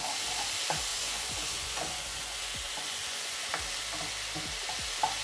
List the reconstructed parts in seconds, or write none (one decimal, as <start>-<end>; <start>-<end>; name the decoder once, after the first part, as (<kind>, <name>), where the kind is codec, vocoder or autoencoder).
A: 0.9-3.6 (vocoder, Vocos)